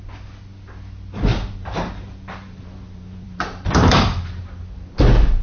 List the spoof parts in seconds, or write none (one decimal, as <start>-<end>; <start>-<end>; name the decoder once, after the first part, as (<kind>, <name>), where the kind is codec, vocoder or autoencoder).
1.3-4.0 (vocoder, BigVGAN v2)